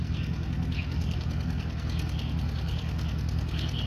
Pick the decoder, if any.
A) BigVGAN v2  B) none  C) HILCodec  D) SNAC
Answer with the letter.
D